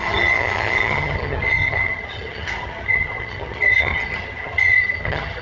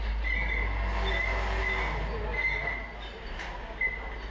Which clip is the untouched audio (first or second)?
second